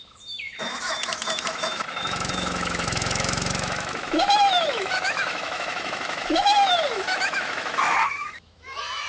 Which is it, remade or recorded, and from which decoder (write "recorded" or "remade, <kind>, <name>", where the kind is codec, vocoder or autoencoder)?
remade, autoencoder, DAC-VAE